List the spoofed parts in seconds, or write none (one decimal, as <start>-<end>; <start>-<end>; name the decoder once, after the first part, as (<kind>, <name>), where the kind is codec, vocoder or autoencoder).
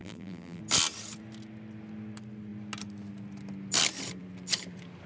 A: 0.0-0.6 (vocoder, BigVGAN v2)